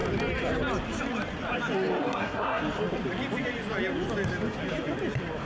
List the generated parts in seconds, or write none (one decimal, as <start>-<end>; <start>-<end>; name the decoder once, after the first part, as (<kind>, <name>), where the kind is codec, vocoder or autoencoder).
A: 2.0-2.6 (codec, SNAC)